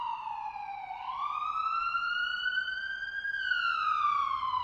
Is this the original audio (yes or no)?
yes